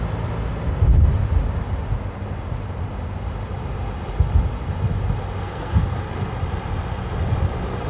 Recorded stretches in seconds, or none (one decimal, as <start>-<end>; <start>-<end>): 0.0-5.4; 6.3-7.9